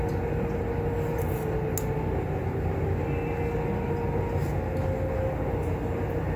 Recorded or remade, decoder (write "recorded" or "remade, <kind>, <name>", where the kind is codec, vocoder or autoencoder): recorded